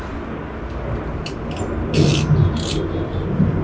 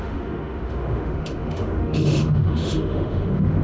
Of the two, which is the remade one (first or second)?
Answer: second